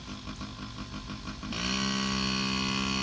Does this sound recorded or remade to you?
recorded